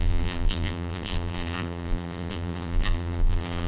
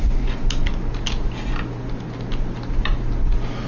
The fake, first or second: first